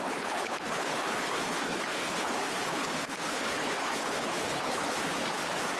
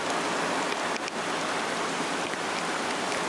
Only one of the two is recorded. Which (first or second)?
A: second